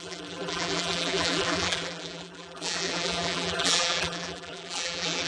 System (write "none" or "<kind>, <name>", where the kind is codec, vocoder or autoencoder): vocoder, BigVGAN v2